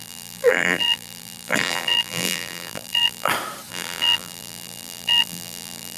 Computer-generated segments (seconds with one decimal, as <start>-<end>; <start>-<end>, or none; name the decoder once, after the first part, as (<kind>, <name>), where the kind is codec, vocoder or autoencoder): 0.0-3.3 (vocoder, BigVGAN v2); 3.7-6.0